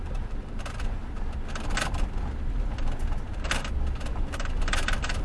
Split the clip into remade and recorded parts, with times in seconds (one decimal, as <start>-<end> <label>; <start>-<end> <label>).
0.0-1.0 remade; 1.0-4.0 recorded; 4.0-5.2 remade